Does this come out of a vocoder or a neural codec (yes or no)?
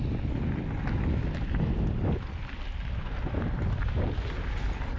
no